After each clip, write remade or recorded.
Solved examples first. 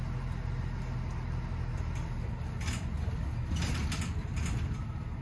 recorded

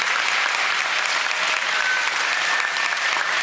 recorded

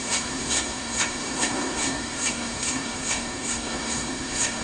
remade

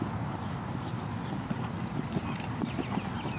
recorded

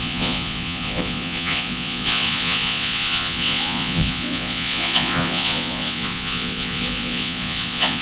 remade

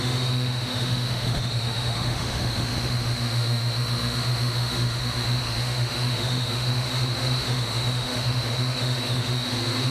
remade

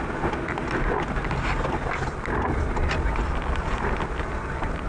recorded